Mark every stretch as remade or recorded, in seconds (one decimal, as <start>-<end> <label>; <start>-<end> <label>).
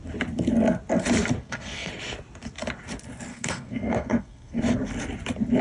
0.0-1.4 recorded; 1.4-1.9 remade; 1.9-3.3 recorded; 3.3-4.6 remade; 4.6-5.6 recorded